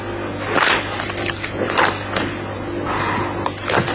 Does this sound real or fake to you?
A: real